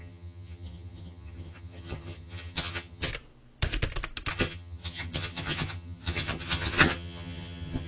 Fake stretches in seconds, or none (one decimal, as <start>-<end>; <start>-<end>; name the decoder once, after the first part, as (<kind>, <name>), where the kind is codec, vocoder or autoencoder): 0.0-3.1 (vocoder, HiFi-GAN); 4.3-7.9